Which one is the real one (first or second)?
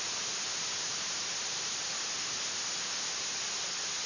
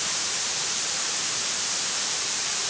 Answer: first